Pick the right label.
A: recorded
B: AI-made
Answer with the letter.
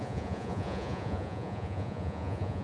B